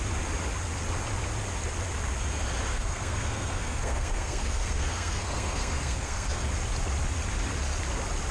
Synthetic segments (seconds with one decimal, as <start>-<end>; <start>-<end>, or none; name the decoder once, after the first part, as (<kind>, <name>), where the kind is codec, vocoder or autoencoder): 2.7-6.5 (codec, SNAC)